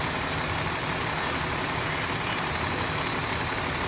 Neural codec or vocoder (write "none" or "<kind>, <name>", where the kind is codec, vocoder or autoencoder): none